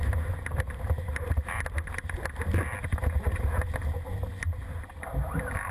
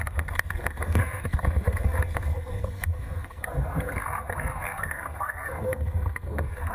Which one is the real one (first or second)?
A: first